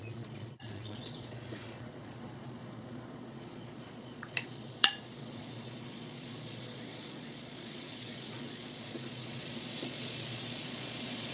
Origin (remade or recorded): remade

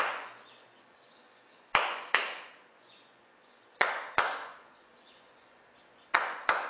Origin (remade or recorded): remade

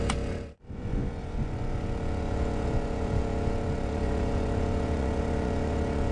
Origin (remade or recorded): remade